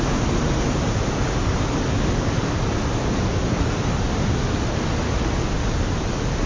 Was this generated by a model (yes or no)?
no